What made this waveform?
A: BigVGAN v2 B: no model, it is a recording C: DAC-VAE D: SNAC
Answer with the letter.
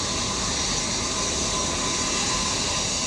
B